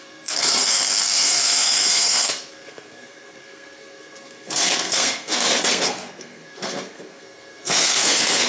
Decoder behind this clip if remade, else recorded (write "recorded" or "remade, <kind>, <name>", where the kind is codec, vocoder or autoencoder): remade, codec, SNAC